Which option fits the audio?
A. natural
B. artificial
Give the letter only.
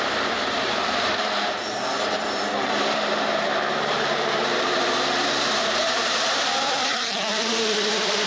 B